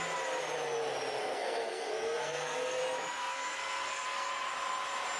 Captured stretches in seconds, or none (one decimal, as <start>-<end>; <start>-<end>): 0.0-1.2; 2.8-3.2; 4.3-5.2